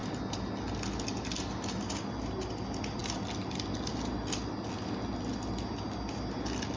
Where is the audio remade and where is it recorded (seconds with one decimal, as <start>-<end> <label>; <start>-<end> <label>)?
0.0-6.8 recorded